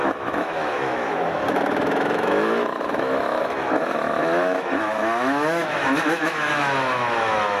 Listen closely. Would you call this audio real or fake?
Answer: fake